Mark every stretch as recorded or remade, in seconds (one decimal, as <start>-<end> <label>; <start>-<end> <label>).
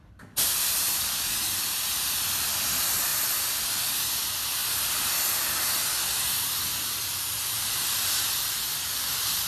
0.0-9.5 recorded